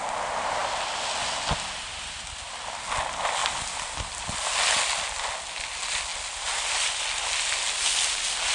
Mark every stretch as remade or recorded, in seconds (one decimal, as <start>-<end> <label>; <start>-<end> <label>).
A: 0.0-8.5 recorded